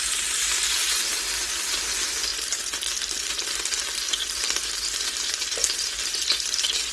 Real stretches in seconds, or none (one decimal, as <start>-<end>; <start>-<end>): 0.0-6.9